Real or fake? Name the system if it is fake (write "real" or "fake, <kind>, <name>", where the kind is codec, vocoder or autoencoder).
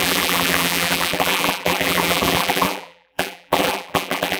fake, vocoder, BigVGAN v2